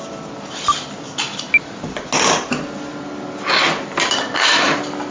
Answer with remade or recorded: recorded